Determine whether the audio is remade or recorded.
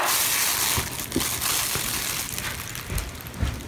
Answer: recorded